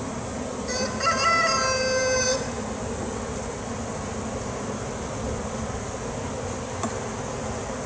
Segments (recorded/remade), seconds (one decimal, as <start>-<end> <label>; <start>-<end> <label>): 0.0-7.9 recorded